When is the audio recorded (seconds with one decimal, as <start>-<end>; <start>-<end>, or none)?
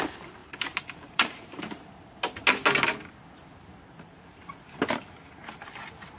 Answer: 0.0-0.4; 1.6-6.2